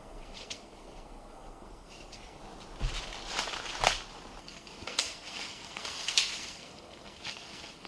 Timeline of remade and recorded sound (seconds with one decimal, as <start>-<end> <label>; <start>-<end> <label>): 0.0-2.4 remade; 2.4-4.4 recorded; 4.4-7.9 remade